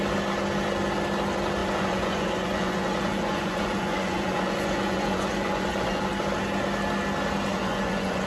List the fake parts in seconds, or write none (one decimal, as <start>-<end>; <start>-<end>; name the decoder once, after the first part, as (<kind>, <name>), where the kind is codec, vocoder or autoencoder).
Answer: 1.6-6.1 (vocoder, Vocos); 7.5-8.3